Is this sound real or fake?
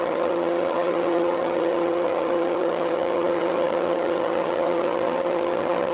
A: fake